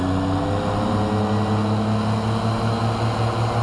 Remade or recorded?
recorded